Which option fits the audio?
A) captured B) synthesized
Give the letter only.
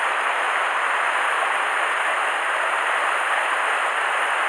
A